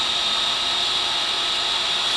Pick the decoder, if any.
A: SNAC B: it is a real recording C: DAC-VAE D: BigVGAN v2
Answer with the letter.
B